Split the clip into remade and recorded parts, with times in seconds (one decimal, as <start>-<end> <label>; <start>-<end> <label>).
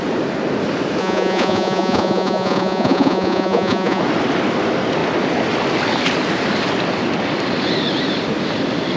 0.0-1.0 recorded; 1.0-4.0 remade; 4.0-9.0 recorded